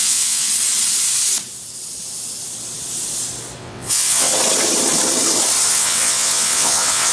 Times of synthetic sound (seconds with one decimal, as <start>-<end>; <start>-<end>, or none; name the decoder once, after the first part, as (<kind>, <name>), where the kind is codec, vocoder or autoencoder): 0.0-0.5 (vocoder, WaveNeXt); 3.6-4.3; 5.7-7.1